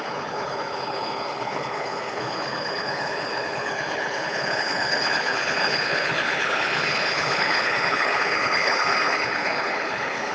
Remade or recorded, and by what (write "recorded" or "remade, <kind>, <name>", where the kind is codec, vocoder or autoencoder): remade, codec, HILCodec